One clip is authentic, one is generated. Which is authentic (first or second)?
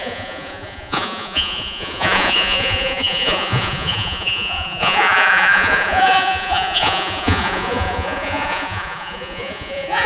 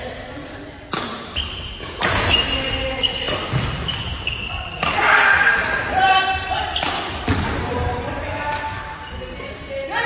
second